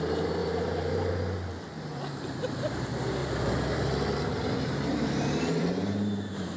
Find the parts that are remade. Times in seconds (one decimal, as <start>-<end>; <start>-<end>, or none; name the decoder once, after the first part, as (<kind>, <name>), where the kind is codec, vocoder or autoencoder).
0.4-1.1 (vocoder, BigVGAN v2); 1.9-2.7; 3.2-6.6